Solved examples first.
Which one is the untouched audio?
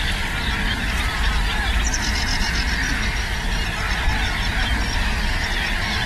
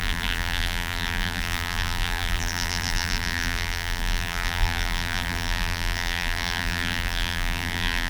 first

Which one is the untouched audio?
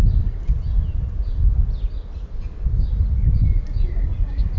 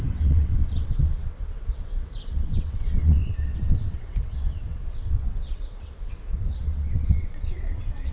first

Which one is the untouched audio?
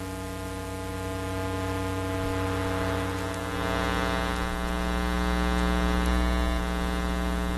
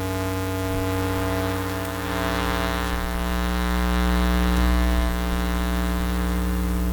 first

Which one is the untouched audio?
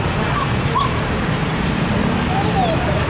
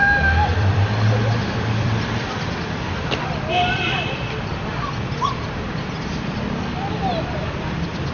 first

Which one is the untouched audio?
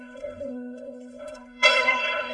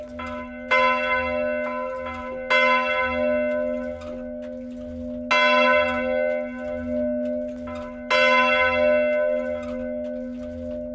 second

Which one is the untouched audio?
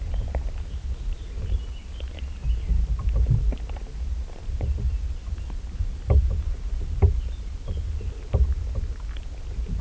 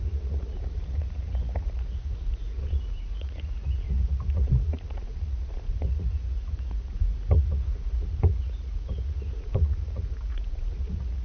first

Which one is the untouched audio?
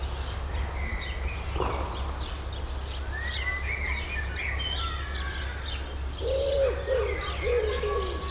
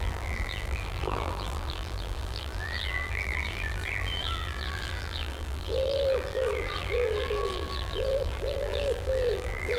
first